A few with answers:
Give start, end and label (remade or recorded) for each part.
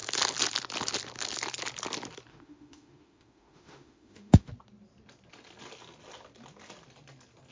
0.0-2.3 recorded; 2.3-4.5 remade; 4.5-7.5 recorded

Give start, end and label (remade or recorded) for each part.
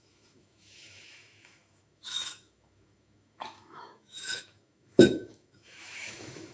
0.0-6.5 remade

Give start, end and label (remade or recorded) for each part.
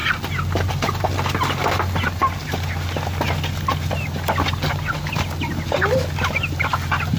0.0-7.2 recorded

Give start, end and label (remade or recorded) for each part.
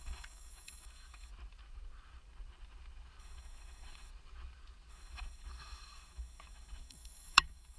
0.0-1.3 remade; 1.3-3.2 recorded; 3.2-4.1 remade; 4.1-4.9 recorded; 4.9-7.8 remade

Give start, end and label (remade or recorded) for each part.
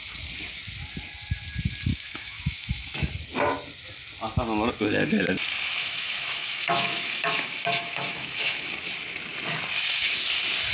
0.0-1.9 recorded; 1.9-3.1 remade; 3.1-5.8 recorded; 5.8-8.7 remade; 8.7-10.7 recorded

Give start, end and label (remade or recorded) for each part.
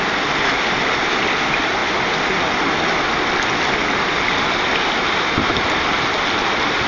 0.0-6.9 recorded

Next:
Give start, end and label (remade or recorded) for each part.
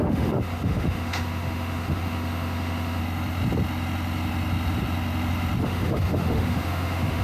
0.0-3.0 remade; 3.0-5.6 recorded; 5.6-7.2 remade